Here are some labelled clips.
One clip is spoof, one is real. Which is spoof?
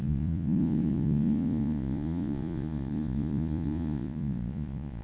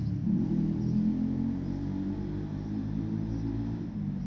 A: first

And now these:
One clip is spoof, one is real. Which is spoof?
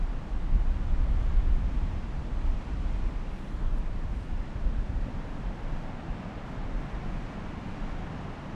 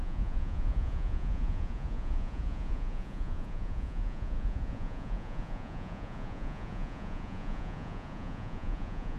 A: second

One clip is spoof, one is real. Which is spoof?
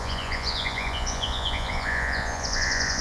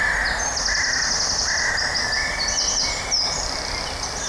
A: first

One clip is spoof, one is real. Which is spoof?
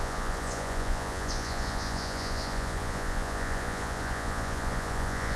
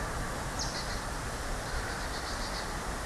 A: first